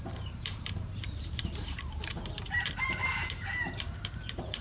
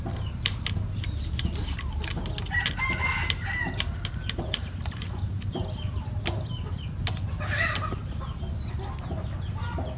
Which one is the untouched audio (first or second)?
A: second